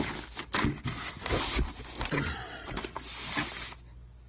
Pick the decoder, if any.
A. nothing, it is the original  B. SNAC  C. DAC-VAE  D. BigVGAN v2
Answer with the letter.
A